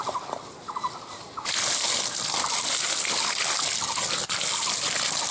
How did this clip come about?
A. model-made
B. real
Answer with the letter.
B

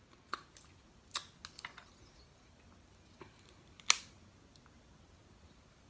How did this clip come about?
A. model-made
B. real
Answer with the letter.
B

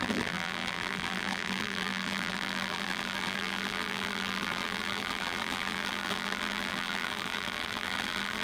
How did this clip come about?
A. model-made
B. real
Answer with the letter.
A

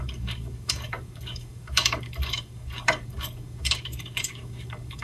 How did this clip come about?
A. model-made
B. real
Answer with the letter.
A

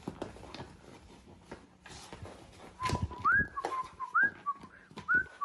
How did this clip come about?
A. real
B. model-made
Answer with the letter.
A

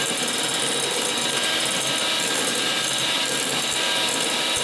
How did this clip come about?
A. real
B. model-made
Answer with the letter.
A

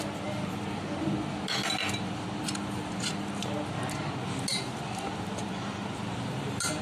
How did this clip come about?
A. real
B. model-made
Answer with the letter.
A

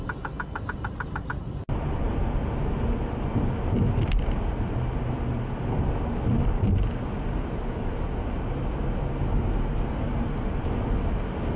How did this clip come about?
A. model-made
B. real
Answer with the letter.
B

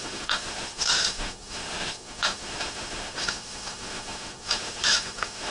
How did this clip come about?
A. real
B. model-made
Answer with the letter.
B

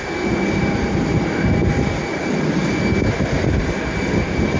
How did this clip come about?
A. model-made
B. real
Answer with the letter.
B